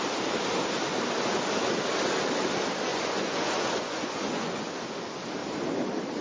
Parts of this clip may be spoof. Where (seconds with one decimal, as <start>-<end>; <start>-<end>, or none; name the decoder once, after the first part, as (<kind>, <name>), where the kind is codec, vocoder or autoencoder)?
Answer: 2.9-4.7 (vocoder, Vocos)